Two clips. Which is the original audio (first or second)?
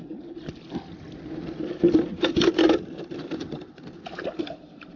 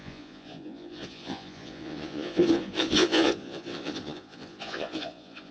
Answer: first